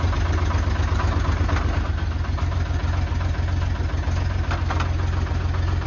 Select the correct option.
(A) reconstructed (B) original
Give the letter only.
B